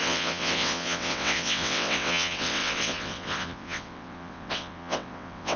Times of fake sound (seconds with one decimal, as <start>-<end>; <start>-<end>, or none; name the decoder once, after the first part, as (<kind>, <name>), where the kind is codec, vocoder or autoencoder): 0.0-5.6 (vocoder, WaveNeXt)